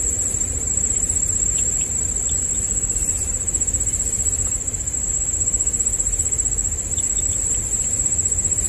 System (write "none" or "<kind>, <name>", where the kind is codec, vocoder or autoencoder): vocoder, BigVGAN v2